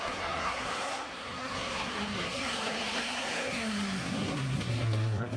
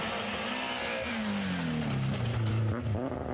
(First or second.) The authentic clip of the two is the second